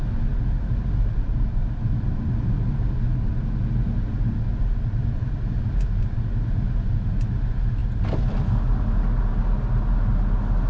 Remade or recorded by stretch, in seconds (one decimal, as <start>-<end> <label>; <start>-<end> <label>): 0.0-10.7 recorded